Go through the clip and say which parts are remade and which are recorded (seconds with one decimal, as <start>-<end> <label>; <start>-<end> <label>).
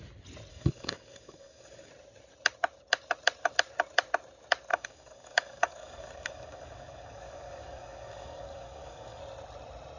0.0-0.5 recorded; 0.5-1.9 remade; 1.9-4.7 recorded; 4.7-9.2 remade; 9.2-10.0 recorded